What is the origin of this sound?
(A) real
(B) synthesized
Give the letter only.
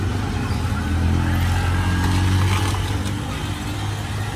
A